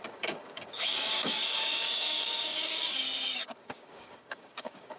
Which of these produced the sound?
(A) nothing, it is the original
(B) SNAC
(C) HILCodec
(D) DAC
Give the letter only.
D